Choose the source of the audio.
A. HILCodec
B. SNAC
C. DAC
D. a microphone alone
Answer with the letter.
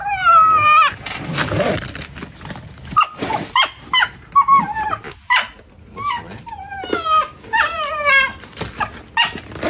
D